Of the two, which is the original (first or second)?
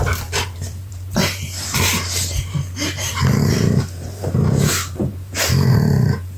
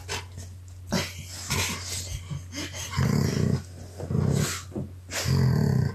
second